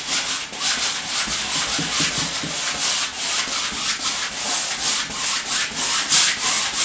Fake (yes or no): no